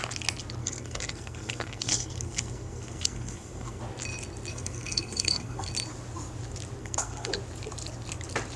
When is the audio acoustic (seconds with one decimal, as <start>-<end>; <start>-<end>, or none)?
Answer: 0.0-0.6; 3.8-4.5; 5.7-6.8; 7.3-8.6